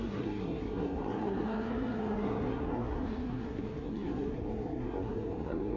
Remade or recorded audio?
remade